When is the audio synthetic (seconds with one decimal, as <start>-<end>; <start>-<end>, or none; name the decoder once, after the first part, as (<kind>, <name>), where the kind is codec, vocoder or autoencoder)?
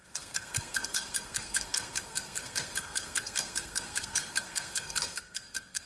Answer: 0.0-5.9 (codec, SNAC)